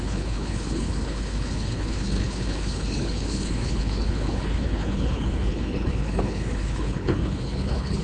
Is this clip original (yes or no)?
no